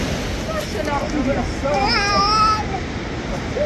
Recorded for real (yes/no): yes